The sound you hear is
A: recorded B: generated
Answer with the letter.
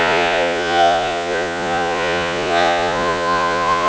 B